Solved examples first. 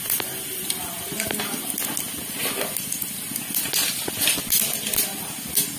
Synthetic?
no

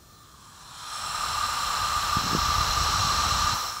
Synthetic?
no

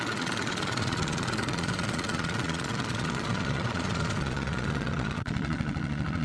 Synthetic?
yes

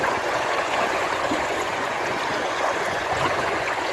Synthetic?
yes